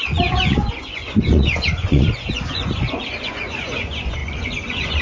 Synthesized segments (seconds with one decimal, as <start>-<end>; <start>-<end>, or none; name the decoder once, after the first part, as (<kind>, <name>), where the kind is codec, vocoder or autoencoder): 0.0-5.0 (vocoder, Vocos)